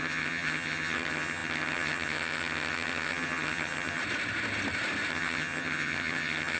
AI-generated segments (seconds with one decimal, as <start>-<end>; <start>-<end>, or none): 0.0-4.0; 5.1-6.6